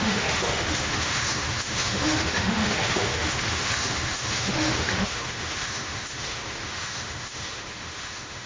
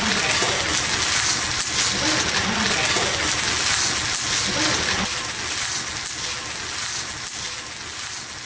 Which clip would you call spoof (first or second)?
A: first